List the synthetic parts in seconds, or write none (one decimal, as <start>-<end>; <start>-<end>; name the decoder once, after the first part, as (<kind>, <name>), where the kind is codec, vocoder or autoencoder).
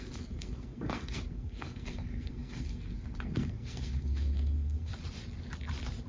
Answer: 0.0-4.9 (codec, SNAC)